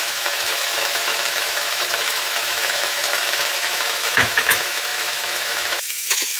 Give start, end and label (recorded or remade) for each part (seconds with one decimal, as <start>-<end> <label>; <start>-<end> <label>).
0.0-6.4 remade